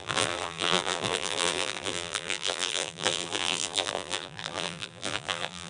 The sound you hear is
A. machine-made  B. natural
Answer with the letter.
A